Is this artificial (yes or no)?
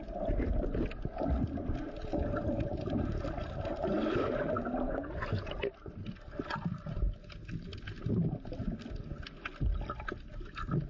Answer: no